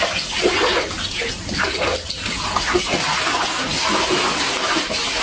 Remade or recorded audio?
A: recorded